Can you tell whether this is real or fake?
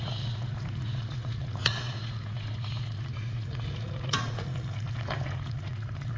fake